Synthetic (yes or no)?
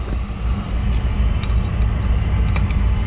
no